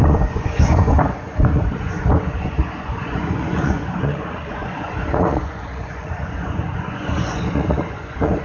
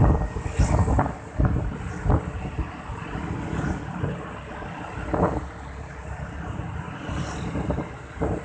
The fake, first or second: first